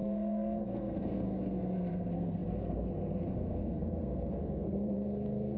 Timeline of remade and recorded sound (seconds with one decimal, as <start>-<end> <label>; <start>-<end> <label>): 0.0-5.6 remade